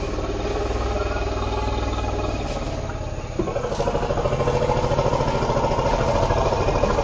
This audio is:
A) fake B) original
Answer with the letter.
B